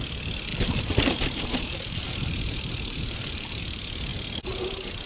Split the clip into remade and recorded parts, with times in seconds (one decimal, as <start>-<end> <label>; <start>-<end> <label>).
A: 0.0-0.5 recorded; 0.5-3.6 remade; 3.6-4.1 recorded; 4.1-5.1 remade